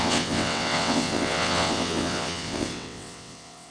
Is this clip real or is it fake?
fake